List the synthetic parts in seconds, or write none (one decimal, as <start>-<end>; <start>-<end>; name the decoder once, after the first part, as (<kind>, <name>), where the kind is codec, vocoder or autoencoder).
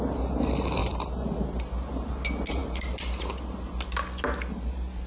none